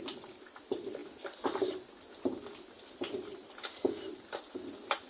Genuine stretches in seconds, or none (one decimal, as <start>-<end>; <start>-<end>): 0.0-5.1